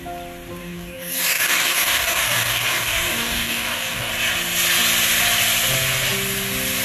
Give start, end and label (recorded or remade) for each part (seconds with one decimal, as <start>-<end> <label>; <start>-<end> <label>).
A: 0.0-0.6 recorded; 0.6-4.1 remade; 4.1-6.8 recorded